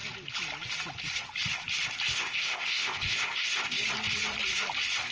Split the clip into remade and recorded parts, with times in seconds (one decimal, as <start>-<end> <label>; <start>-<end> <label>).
0.0-2.1 recorded; 2.1-3.8 remade; 3.8-5.1 recorded